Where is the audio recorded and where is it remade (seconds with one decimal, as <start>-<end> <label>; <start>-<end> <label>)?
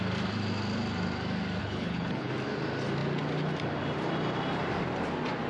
0.0-1.6 recorded; 1.6-2.3 remade; 2.3-5.5 recorded